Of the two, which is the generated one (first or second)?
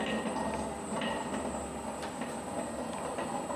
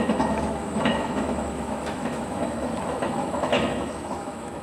second